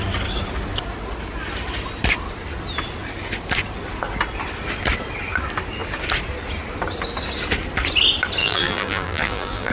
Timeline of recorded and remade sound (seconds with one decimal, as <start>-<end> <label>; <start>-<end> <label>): 0.0-8.4 recorded; 8.4-9.7 remade